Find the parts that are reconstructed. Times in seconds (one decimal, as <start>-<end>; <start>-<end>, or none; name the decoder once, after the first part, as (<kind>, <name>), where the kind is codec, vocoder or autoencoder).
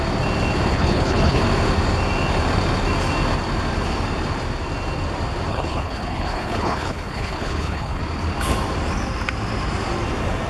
0.7-1.4 (codec, HILCodec); 5.5-8.0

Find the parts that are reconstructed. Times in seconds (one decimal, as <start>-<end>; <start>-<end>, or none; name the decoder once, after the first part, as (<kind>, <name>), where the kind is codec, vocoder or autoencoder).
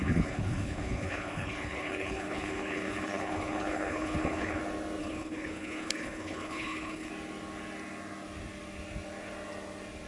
0.0-4.6 (codec, HILCodec); 5.0-7.1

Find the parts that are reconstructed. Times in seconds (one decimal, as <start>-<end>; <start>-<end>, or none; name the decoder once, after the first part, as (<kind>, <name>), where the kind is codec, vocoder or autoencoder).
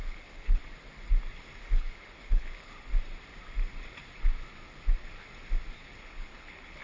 0.0-0.6 (codec, HILCodec); 1.6-2.9; 6.0-6.8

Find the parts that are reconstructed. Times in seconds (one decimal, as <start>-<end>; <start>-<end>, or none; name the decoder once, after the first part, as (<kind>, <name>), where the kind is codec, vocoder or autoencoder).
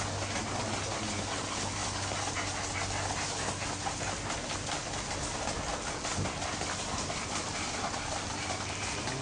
none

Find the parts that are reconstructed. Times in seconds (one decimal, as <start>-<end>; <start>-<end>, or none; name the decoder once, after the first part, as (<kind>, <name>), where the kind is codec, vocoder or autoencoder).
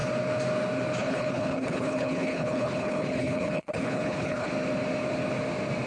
1.0-4.5 (codec, HILCodec)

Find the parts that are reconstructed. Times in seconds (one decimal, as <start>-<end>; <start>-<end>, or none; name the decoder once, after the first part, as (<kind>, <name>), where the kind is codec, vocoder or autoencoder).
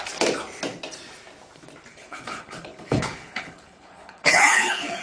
1.9-5.0 (codec, HILCodec)